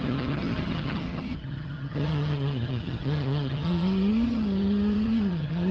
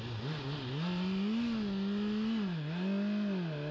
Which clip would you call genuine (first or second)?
second